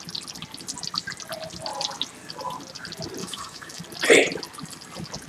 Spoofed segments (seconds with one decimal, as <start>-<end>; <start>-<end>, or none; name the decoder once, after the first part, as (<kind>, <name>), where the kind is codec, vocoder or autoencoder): 3.2-3.8 (autoencoder, DAC-VAE)